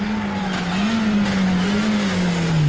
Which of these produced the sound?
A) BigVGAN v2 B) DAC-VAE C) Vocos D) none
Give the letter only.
D